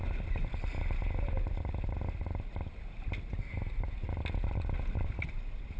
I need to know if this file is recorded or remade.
recorded